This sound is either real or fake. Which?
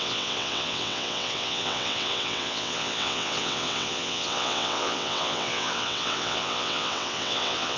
fake